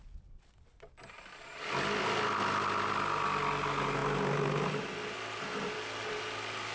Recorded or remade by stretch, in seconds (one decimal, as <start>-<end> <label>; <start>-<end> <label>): 0.0-6.7 recorded

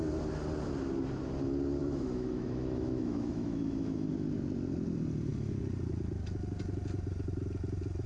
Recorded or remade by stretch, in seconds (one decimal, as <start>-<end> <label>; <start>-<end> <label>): 0.0-1.8 recorded; 1.8-4.1 remade; 4.1-8.1 recorded